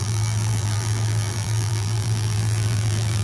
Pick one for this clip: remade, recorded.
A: remade